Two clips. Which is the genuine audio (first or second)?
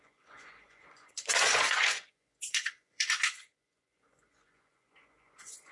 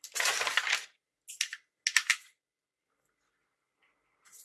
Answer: second